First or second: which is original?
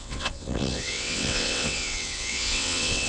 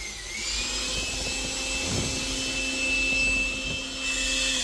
second